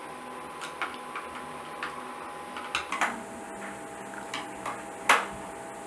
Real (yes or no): yes